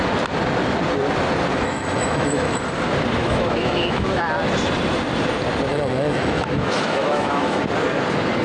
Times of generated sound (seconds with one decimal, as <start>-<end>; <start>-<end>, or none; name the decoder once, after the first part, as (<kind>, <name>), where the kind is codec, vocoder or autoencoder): 1.5-2.6 (autoencoder, DAC-VAE); 3.2-4.2; 5.7-7.6